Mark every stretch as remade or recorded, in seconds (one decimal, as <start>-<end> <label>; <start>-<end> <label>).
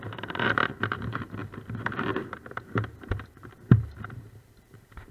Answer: 0.0-5.1 remade